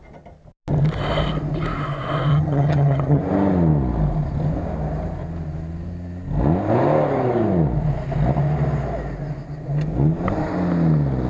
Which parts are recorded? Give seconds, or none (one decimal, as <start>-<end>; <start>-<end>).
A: 0.0-2.3; 3.2-11.3